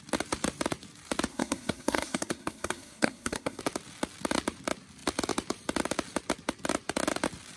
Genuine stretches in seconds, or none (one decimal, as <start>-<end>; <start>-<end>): 0.0-1.3; 3.6-7.6